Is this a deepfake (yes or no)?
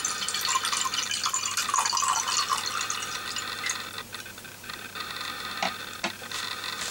no